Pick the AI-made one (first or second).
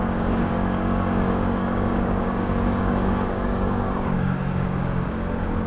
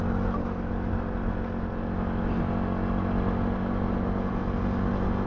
first